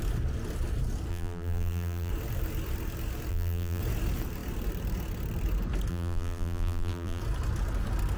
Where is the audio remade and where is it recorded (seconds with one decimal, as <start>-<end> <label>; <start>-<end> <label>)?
0.0-1.1 recorded; 1.1-2.1 remade; 2.1-3.3 recorded; 3.3-3.8 remade; 3.8-5.9 recorded; 5.9-7.2 remade; 7.2-8.2 recorded